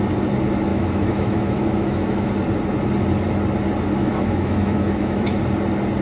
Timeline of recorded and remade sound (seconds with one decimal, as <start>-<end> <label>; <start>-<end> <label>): 0.0-0.7 recorded; 0.7-2.3 remade; 2.3-4.0 recorded; 4.0-5.4 remade; 5.4-6.0 recorded